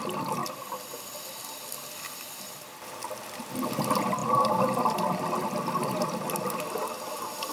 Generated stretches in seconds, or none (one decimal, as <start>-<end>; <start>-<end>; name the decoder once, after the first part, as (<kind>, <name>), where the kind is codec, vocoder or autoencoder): none

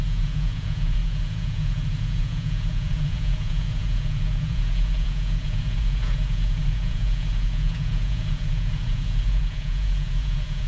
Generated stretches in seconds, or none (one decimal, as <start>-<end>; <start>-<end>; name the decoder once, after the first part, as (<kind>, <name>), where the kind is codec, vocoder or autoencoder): 0.0-10.7 (vocoder, Vocos)

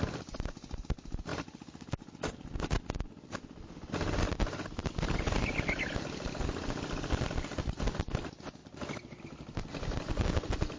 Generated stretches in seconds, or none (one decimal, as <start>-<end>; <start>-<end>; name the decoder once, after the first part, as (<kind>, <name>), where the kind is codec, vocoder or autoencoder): none

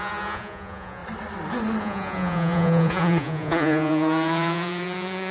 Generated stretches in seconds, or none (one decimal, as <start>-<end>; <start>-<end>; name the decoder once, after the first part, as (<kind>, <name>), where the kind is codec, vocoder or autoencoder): 0.0-1.0 (vocoder, Vocos); 1.8-5.3

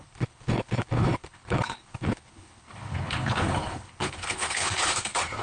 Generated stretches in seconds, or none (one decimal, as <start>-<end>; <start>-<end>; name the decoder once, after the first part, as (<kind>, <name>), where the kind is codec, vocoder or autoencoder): 0.0-5.4 (codec, HILCodec)

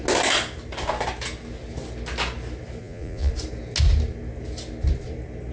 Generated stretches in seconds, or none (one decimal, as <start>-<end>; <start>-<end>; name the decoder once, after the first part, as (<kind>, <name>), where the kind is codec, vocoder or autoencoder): 2.8-3.3 (vocoder, Vocos)